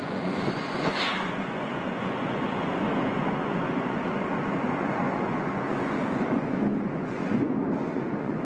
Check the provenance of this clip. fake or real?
fake